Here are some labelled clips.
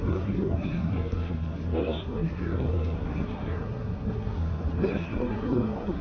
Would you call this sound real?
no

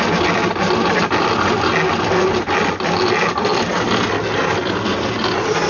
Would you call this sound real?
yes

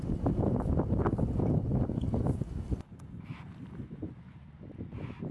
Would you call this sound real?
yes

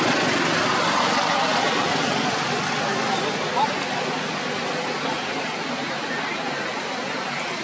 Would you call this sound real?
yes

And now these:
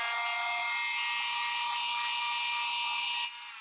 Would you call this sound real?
yes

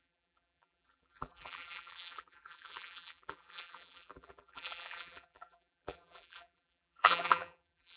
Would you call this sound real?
no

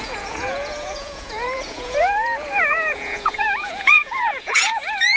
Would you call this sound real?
no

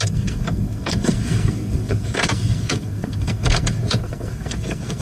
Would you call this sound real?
no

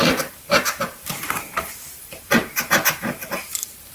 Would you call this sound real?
no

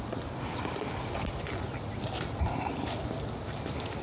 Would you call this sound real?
yes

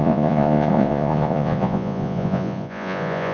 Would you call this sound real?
no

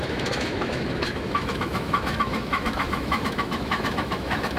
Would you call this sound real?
no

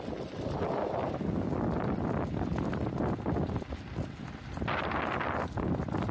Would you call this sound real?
yes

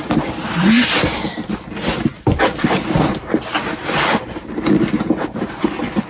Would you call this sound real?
yes